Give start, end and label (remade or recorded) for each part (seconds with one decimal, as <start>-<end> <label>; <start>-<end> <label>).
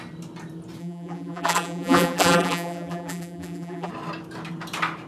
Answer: 0.0-0.8 recorded; 0.8-3.9 remade; 3.9-5.1 recorded